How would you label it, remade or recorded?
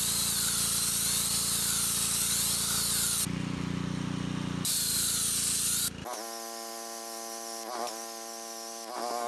recorded